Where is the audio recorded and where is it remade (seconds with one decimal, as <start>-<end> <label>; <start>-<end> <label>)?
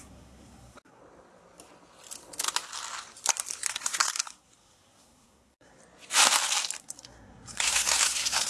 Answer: 0.0-1.0 remade; 1.0-3.7 recorded; 3.7-5.8 remade; 5.8-6.8 recorded; 6.8-8.5 remade